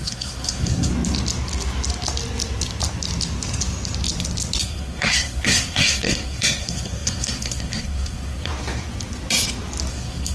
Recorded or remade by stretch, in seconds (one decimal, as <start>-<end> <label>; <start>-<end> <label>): 0.0-0.9 remade; 0.9-4.6 recorded; 4.6-8.5 remade; 8.5-9.9 recorded; 9.9-10.3 remade